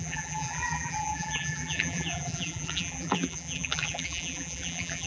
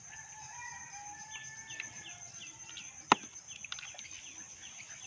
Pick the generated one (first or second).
first